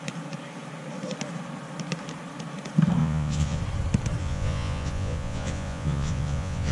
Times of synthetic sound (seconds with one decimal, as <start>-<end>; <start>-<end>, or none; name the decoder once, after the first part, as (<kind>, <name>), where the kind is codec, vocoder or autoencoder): 3.0-3.6 (vocoder, Vocos); 4.2-6.7